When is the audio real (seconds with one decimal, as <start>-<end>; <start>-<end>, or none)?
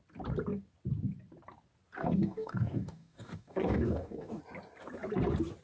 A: 0.0-2.0; 4.4-5.6